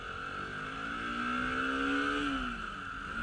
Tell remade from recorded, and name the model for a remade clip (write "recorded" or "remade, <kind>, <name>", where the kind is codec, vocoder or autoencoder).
recorded